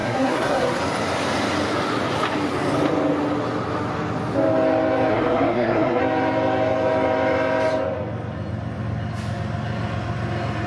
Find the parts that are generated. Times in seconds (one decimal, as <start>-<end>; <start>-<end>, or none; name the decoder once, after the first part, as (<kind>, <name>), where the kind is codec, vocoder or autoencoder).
0.0-0.8 (codec, SNAC); 5.1-6.0